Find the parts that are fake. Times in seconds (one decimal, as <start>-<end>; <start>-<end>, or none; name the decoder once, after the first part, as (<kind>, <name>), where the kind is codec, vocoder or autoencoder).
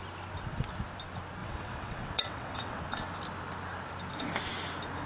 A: 1.4-2.8 (vocoder, WaveNeXt)